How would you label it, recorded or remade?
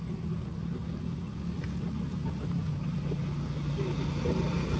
recorded